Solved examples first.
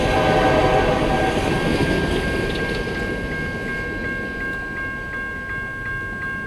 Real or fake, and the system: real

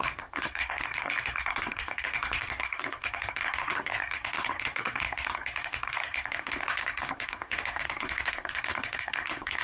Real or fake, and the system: fake, codec, SNAC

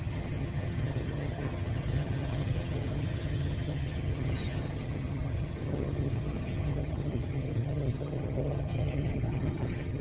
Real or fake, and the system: fake, vocoder, HiFi-GAN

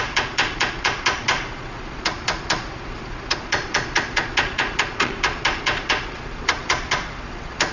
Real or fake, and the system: fake, vocoder, Vocos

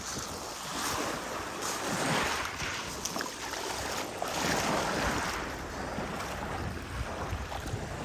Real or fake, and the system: real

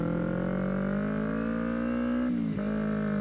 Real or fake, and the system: real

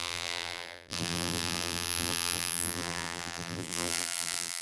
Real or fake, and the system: fake, vocoder, BigVGAN v2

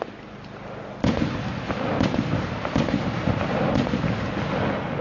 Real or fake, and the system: real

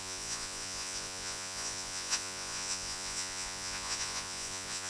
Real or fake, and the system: fake, vocoder, Vocos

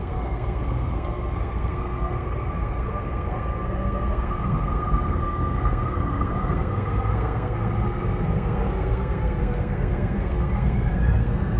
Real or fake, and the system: fake, codec, SNAC